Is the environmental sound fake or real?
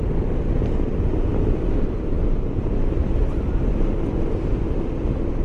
real